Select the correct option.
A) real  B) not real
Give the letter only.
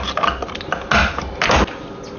A